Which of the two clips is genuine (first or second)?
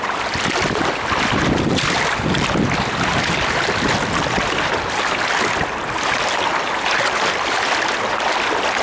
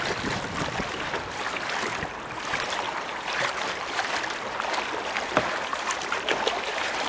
first